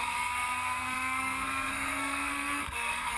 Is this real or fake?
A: fake